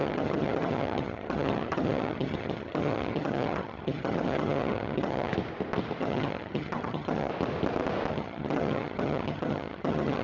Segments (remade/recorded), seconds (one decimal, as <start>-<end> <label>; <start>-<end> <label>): 0.0-5.3 remade; 5.3-6.0 recorded; 6.0-7.3 remade; 7.3-8.1 recorded; 8.1-10.2 remade